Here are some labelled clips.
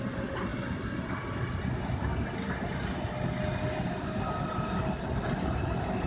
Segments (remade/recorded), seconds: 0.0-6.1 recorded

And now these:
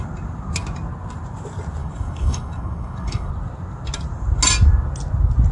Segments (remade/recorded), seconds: 0.0-1.8 recorded; 1.8-3.3 remade; 3.3-5.5 recorded

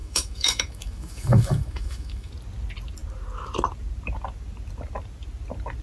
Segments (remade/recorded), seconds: 0.0-2.3 remade; 2.3-5.8 recorded

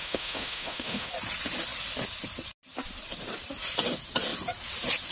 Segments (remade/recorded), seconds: 0.0-1.1 remade; 1.1-5.1 recorded

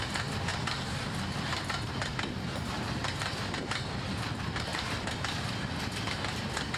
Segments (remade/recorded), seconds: 0.0-0.5 remade; 0.5-1.9 recorded; 1.9-6.8 remade

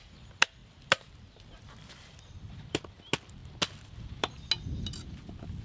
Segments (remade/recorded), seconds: 0.0-0.6 recorded; 0.6-2.8 remade; 2.8-5.6 recorded

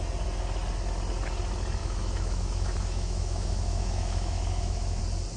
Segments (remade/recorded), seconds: 0.0-1.8 recorded; 1.8-5.0 remade; 5.0-5.4 recorded